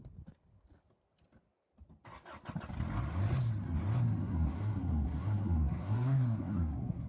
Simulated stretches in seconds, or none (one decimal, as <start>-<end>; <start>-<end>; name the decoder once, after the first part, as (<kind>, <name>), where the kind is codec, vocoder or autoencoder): 4.2-7.1 (codec, SNAC)